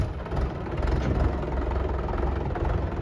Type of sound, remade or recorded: recorded